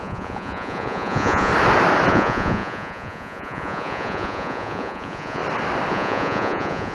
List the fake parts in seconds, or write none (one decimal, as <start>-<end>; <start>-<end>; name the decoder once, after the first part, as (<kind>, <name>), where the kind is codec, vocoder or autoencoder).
0.0-1.5 (vocoder, Vocos); 2.1-5.4; 5.9-6.9